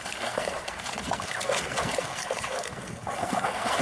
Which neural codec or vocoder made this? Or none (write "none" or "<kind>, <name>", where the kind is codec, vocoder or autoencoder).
codec, SNAC